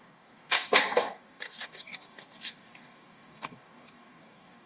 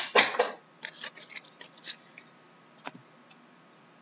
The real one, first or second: second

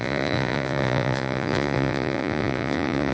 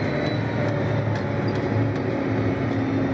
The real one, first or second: second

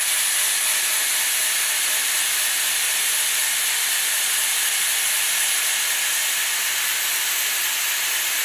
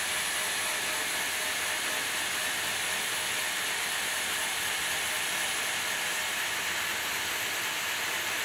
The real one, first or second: second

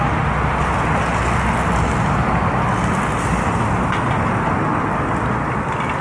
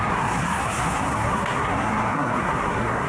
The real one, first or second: first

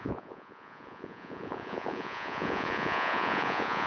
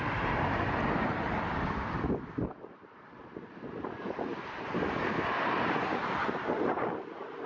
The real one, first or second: second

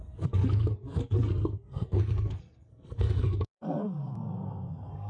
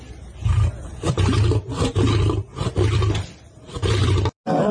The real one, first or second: second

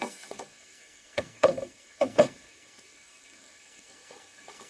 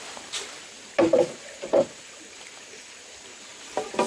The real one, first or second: second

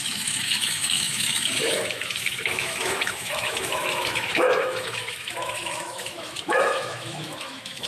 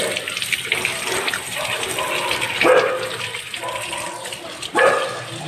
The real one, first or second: second